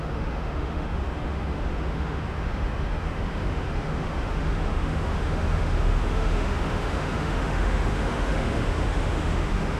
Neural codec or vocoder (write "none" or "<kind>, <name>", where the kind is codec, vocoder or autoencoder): autoencoder, DAC-VAE